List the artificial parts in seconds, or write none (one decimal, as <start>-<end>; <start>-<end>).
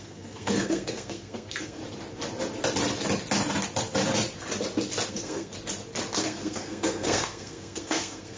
0.0-1.8; 5.1-5.5; 6.2-8.4